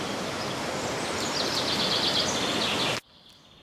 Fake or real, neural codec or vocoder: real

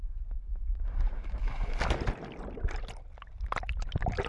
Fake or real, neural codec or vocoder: real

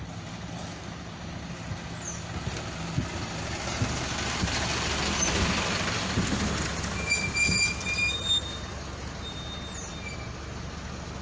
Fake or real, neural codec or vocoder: real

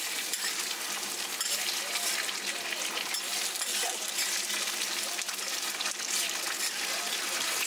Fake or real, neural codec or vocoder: real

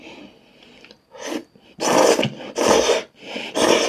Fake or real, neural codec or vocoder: real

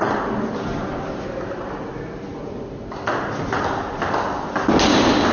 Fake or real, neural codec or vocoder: real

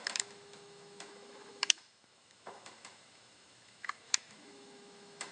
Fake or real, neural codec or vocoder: fake, autoencoder, DAC-VAE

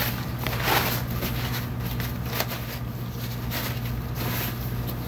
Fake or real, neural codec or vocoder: real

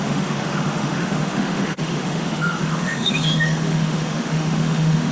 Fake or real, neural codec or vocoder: fake, autoencoder, DAC-VAE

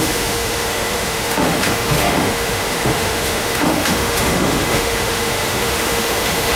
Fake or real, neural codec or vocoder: fake, autoencoder, DAC-VAE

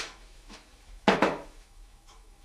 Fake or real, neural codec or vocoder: fake, autoencoder, DAC-VAE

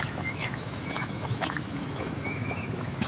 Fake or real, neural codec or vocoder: fake, autoencoder, DAC-VAE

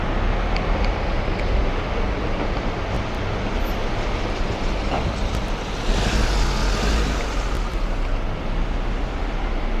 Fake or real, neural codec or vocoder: real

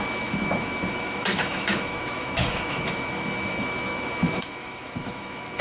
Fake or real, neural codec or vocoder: fake, autoencoder, DAC-VAE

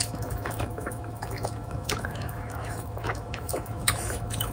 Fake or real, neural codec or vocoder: fake, autoencoder, DAC-VAE